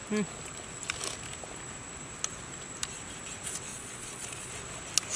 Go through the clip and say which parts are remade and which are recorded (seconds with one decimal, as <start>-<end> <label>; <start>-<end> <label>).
0.0-3.7 recorded; 3.7-4.5 remade; 4.5-5.2 recorded